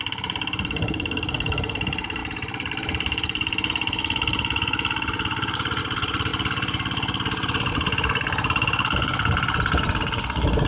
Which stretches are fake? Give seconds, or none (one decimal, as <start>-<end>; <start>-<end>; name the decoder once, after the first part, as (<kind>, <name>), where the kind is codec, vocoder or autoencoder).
0.0-6.3 (vocoder, BigVGAN v2); 7.7-10.7